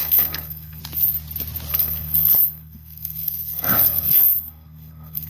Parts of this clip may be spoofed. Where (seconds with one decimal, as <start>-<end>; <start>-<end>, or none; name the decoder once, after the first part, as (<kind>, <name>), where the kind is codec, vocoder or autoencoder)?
0.0-0.8 (codec, SNAC); 1.7-5.3